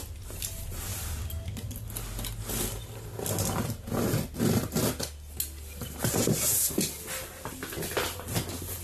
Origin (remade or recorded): recorded